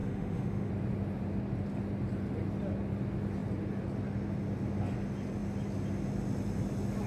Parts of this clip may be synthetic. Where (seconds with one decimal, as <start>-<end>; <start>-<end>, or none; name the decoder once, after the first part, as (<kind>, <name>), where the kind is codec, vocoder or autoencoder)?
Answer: 0.0-0.7 (autoencoder, DAC-VAE)